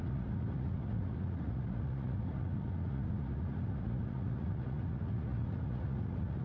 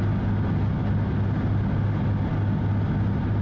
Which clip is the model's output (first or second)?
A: first